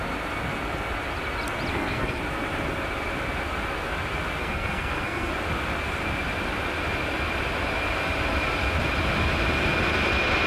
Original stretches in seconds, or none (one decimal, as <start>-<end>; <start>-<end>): 0.0-1.7; 2.2-4.4; 5.3-10.5